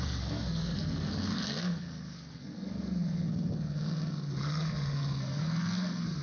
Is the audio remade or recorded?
remade